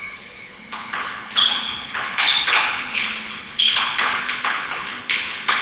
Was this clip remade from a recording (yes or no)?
yes